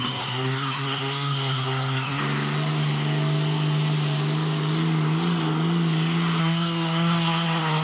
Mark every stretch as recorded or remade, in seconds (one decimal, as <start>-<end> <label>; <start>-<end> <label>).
0.0-2.2 remade; 2.2-6.4 recorded; 6.4-7.8 remade